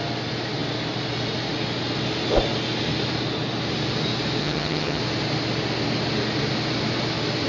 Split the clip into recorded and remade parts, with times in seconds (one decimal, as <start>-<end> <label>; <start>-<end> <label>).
0.0-4.4 recorded; 4.4-5.0 remade; 5.0-7.5 recorded